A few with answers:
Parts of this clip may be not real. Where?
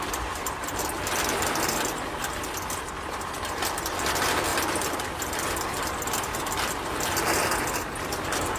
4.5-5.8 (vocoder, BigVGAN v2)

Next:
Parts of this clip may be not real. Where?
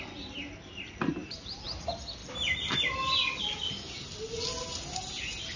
1.2-1.8 (vocoder, BigVGAN v2); 2.2-2.8